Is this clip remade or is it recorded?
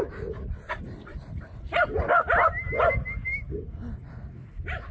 recorded